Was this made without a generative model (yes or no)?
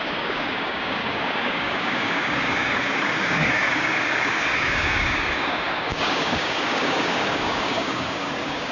no